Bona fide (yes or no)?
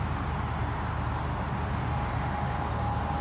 yes